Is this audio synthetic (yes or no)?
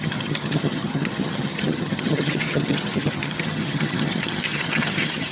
yes